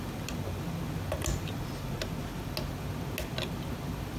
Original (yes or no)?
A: yes